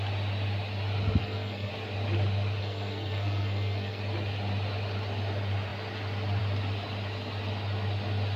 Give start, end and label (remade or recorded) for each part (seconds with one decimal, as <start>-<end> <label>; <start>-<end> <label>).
0.0-1.2 recorded; 1.2-1.7 remade; 1.7-2.6 recorded; 2.6-4.0 remade; 4.0-8.4 recorded